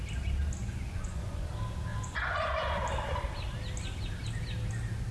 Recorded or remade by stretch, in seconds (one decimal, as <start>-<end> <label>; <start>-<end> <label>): 0.0-0.6 recorded; 0.6-1.5 remade; 1.5-1.9 recorded; 1.9-2.8 remade; 2.8-5.1 recorded